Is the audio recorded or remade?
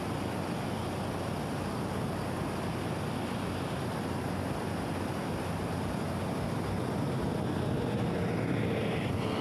recorded